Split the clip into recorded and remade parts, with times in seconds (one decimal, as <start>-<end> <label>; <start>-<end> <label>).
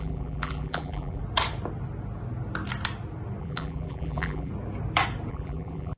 0.0-1.2 remade; 1.2-3.4 recorded; 3.4-4.5 remade; 4.5-5.3 recorded; 5.3-6.0 remade